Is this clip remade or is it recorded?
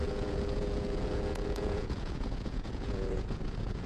remade